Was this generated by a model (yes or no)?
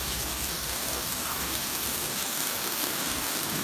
yes